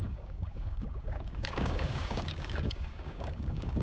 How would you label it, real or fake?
fake